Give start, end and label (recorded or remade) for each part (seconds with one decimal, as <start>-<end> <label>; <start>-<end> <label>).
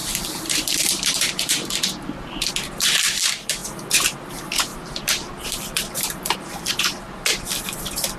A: 0.0-2.5 remade; 2.5-4.7 recorded; 4.7-6.7 remade; 6.7-8.2 recorded